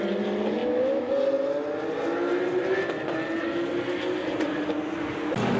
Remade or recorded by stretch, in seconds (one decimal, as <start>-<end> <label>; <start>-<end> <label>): 0.0-0.6 recorded; 0.6-1.1 remade; 1.1-5.6 recorded